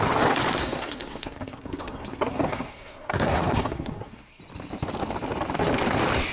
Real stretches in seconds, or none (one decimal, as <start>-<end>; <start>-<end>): 0.0-0.6; 4.4-6.3